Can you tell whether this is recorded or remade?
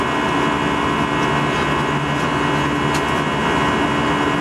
recorded